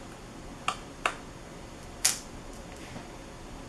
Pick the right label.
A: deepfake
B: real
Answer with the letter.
B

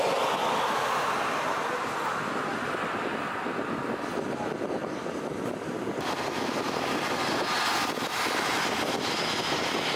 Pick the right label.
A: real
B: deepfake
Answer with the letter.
A